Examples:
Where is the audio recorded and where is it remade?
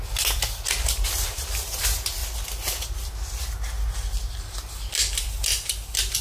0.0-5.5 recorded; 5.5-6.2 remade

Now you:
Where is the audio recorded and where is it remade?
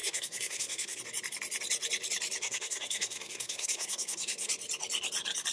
0.0-1.0 remade; 1.0-2.4 recorded; 2.4-4.5 remade; 4.5-5.5 recorded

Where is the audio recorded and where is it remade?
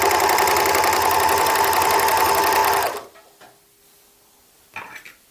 0.0-5.3 recorded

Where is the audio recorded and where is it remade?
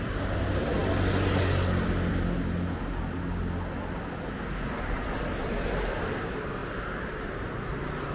0.0-8.1 recorded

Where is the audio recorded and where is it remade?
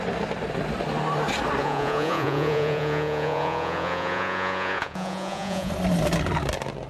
0.0-1.6 recorded; 1.6-5.7 remade; 5.7-6.9 recorded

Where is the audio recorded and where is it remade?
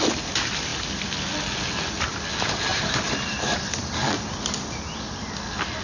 0.0-2.7 recorded; 2.7-3.8 remade; 3.8-5.8 recorded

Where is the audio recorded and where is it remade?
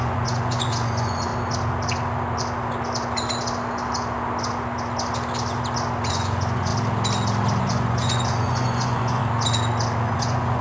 0.0-1.3 remade; 1.3-6.1 recorded; 6.1-6.7 remade; 6.7-7.6 recorded; 7.6-9.2 remade; 9.2-10.1 recorded; 10.1-10.6 remade